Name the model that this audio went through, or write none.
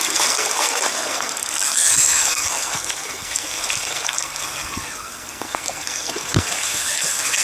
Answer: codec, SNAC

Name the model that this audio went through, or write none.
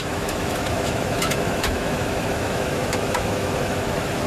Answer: autoencoder, DAC-VAE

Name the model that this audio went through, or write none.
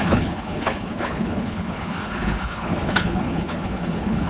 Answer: codec, HILCodec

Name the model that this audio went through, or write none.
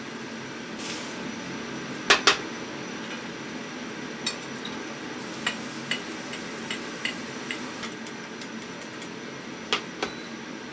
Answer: none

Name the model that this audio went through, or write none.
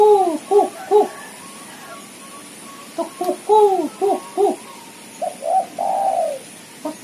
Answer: none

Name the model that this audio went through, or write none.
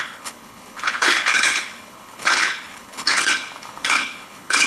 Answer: codec, HILCodec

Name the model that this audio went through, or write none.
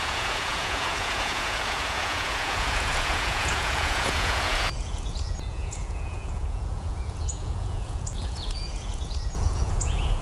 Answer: vocoder, Vocos